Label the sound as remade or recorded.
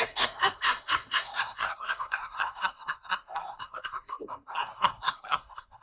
remade